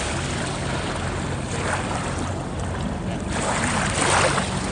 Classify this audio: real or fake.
real